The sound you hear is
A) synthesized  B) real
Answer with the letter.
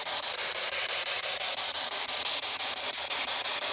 B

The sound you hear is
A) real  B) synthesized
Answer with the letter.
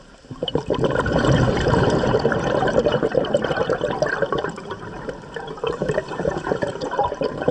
B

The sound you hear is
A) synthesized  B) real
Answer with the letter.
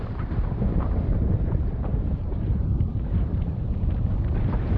A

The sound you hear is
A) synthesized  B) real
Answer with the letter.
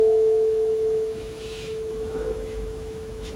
A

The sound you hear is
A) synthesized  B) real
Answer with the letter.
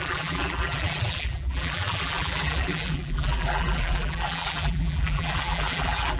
A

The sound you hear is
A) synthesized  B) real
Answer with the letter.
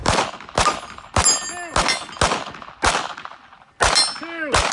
B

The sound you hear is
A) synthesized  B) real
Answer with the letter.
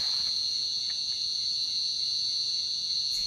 A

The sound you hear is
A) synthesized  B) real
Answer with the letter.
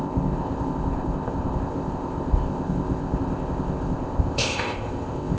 A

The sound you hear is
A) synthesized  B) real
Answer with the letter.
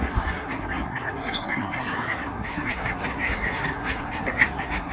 A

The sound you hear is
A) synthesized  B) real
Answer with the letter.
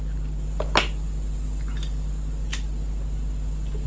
B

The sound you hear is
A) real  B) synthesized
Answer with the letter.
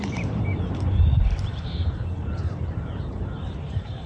B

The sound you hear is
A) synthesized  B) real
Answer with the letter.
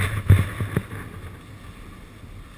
B